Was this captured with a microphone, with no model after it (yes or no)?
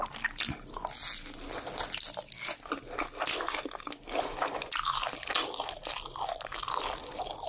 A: yes